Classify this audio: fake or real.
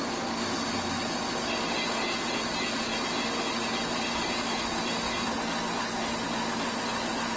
real